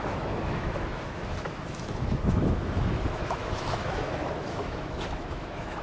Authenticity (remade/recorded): remade